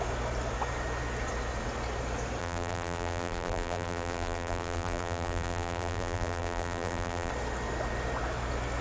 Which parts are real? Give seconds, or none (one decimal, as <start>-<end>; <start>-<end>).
0.0-2.4; 7.3-8.8